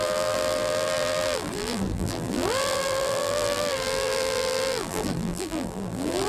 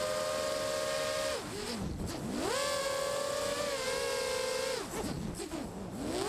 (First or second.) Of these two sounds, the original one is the second